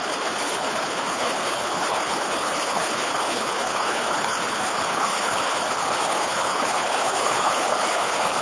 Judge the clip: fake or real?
fake